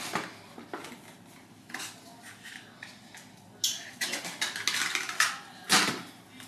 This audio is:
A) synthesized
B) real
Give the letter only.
B